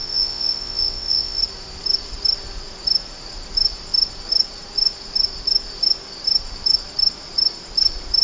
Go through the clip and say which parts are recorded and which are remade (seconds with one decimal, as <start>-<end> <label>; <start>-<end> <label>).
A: 0.0-1.4 remade; 1.4-8.2 recorded